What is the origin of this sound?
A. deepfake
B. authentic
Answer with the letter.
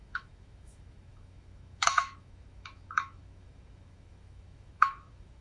A